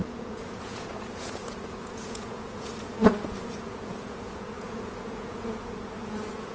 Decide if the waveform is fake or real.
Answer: fake